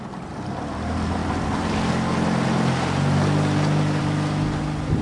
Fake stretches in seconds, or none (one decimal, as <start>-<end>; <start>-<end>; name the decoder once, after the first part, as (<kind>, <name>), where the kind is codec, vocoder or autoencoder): none